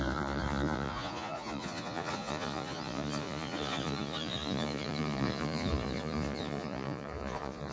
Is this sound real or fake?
fake